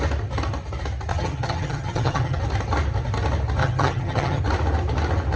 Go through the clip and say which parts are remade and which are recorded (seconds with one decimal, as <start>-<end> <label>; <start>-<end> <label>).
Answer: 0.0-1.1 recorded; 1.1-2.4 remade; 2.4-3.6 recorded; 3.6-4.4 remade; 4.4-5.4 recorded